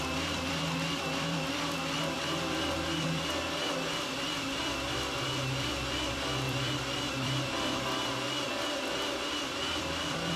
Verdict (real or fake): fake